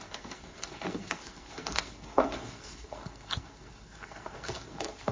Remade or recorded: remade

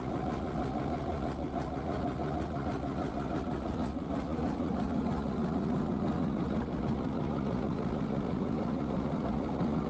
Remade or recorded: remade